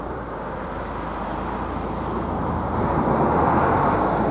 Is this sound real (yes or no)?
yes